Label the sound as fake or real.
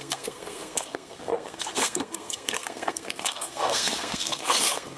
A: fake